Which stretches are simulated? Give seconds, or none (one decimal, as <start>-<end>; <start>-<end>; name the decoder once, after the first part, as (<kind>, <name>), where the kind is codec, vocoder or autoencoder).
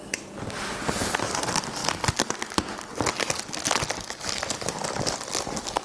none